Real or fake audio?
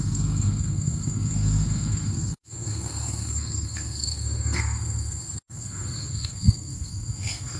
fake